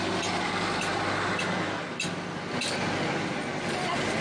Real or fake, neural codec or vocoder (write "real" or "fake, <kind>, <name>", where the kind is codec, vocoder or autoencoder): real